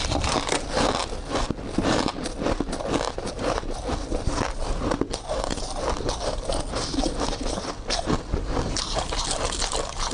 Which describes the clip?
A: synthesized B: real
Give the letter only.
B